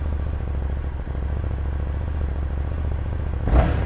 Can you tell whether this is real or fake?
real